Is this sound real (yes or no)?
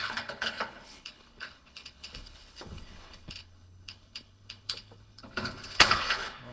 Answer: no